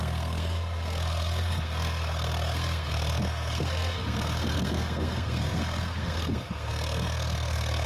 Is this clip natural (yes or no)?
no